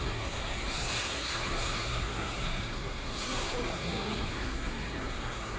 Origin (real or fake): fake